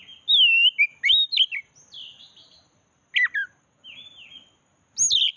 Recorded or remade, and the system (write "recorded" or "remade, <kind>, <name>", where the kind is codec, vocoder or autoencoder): recorded